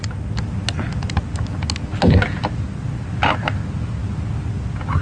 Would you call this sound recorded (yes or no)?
yes